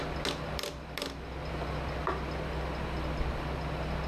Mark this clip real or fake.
real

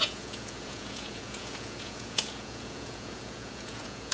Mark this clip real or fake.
fake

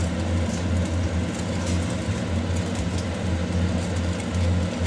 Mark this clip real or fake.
real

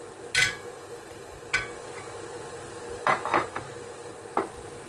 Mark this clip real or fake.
real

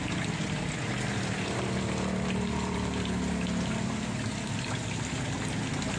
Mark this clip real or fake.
real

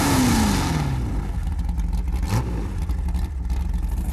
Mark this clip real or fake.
real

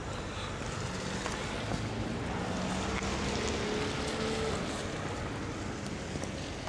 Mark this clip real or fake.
real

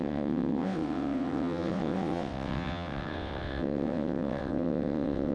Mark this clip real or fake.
fake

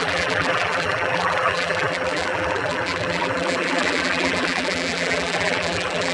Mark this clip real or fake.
fake